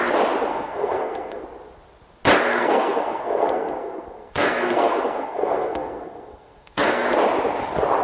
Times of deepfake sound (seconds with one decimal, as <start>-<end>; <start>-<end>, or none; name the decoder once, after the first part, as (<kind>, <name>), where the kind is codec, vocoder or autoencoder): 0.5-1.4 (codec, SNAC); 2.5-7.1